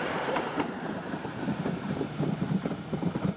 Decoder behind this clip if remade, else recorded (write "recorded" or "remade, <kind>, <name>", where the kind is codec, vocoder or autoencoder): remade, vocoder, BigVGAN v2